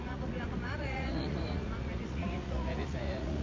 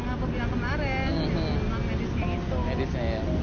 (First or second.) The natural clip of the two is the second